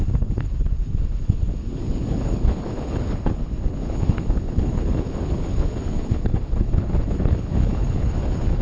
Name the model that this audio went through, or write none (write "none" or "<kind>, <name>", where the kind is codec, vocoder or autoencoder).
codec, HILCodec